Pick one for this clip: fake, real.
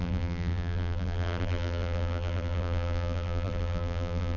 fake